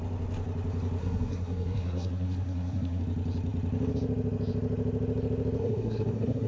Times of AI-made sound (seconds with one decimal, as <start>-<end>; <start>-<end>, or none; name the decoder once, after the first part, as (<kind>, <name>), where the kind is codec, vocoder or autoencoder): 1.0-3.0 (codec, SNAC); 5.6-6.5